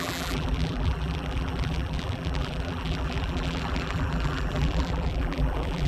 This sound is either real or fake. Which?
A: fake